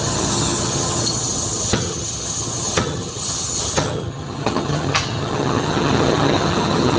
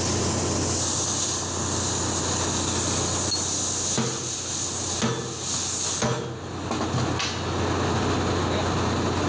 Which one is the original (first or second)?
second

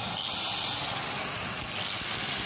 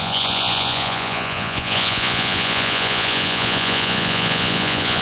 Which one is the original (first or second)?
first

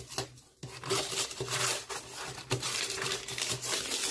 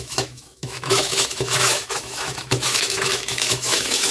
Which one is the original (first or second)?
first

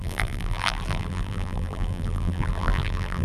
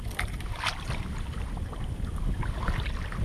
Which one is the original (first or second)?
second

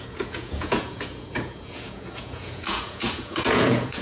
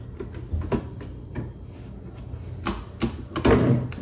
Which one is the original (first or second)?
second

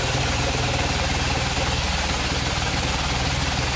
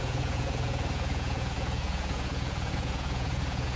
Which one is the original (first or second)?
first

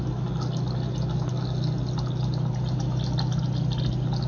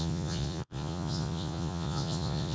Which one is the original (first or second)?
first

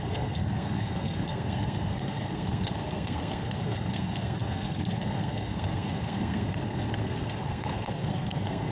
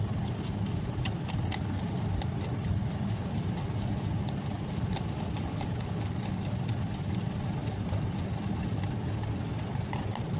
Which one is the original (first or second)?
second